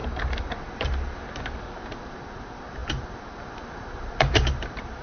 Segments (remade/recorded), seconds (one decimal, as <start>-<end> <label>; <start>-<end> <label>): 0.0-0.6 recorded; 0.6-1.2 remade; 1.2-1.8 recorded; 1.8-5.0 remade